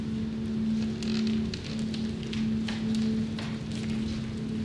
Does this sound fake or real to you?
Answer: real